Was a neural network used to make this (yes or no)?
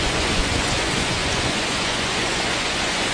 yes